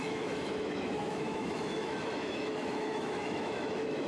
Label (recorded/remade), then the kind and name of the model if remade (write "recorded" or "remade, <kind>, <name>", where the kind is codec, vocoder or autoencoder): remade, autoencoder, DAC-VAE